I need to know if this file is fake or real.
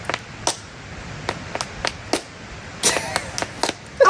real